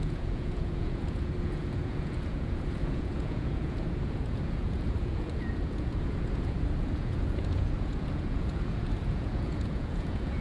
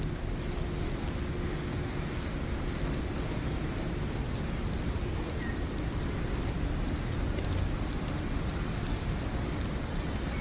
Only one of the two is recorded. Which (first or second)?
second